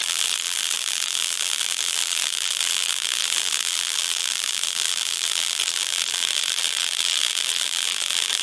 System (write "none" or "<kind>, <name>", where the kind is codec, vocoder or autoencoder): vocoder, BigVGAN v2